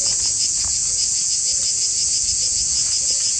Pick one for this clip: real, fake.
fake